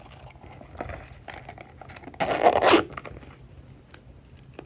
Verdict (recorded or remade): recorded